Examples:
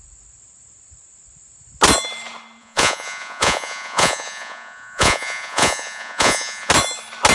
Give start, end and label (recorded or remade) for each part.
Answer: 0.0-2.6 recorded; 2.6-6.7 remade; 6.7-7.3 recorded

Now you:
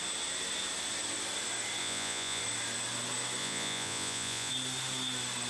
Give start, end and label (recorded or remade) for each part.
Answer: 0.0-1.8 recorded; 1.8-2.4 remade; 2.4-3.4 recorded; 3.4-4.5 remade; 4.5-5.5 recorded

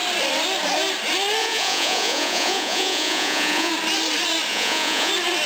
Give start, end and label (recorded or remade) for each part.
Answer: 0.0-1.4 recorded; 1.4-3.7 remade; 3.7-4.5 recorded; 4.5-5.1 remade; 5.1-5.5 recorded

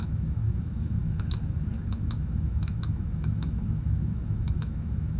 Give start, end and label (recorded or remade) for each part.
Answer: 0.0-5.2 remade

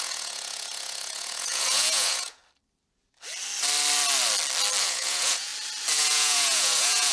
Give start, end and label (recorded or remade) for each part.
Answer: 0.0-2.4 remade; 2.4-4.8 recorded; 4.8-5.5 remade; 5.5-6.0 recorded; 6.0-7.1 remade